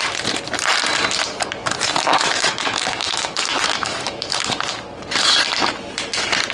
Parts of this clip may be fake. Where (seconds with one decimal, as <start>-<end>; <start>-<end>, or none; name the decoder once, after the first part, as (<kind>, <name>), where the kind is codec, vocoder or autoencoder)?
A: 1.6-4.5 (autoencoder, DAC-VAE)